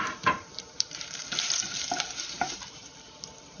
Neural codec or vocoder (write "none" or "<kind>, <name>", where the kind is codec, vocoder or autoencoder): vocoder, BigVGAN v2